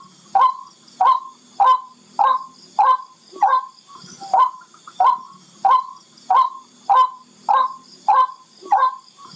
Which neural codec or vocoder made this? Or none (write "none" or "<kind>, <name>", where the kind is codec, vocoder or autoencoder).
none